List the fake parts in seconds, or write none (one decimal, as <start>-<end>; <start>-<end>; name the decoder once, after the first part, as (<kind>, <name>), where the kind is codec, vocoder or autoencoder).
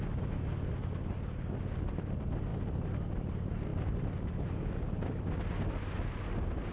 none